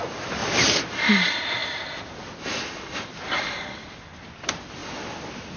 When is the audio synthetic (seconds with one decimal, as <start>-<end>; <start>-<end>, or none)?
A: 1.6-2.3